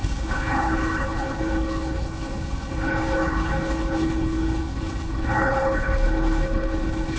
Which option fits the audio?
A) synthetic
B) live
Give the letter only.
A